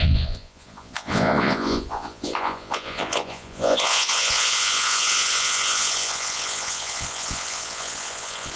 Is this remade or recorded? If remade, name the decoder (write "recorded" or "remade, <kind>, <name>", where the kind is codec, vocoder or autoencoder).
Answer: remade, vocoder, Vocos